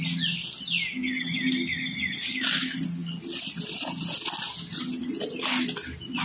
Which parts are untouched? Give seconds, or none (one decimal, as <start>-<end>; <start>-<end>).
0.0-6.2